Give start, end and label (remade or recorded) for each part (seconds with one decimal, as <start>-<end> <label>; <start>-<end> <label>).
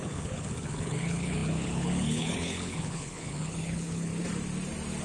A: 0.0-4.1 remade; 4.1-5.0 recorded